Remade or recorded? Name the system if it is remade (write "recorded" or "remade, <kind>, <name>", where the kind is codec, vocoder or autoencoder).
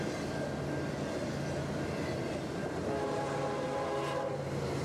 recorded